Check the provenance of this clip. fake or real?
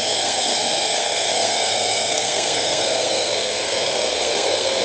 fake